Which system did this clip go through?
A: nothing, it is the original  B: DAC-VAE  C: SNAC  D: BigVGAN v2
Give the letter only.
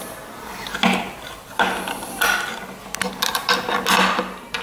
A